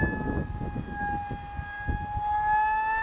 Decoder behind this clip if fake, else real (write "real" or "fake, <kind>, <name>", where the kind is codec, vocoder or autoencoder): real